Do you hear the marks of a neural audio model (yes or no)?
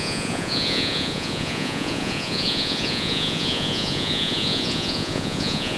yes